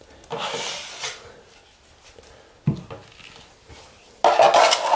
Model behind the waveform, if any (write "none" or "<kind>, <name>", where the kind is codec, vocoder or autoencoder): none